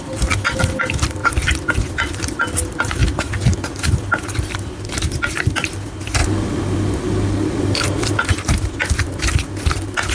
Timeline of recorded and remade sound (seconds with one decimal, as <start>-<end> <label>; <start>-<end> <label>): 0.0-1.2 recorded; 1.2-2.3 remade; 2.3-6.2 recorded; 6.2-8.2 remade; 8.2-10.1 recorded